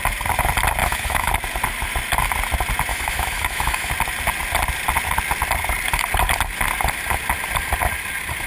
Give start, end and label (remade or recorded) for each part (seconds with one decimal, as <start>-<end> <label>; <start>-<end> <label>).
0.0-0.8 recorded; 0.8-1.3 remade; 1.3-2.9 recorded; 2.9-3.9 remade; 3.9-8.5 recorded